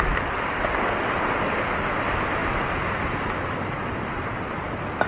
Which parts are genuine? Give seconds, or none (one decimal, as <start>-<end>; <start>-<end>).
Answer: 0.0-2.4